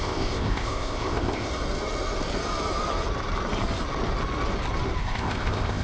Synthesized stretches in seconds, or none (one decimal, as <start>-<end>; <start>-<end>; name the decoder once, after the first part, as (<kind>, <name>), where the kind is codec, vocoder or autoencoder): 0.0-1.5 (codec, ZipCodec); 5.0-5.8